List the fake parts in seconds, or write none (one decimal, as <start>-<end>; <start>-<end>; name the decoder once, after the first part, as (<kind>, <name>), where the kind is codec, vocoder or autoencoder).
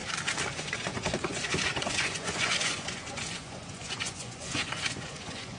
0.5-5.6 (vocoder, Vocos)